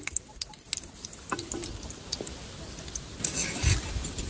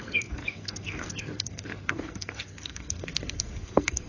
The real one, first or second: first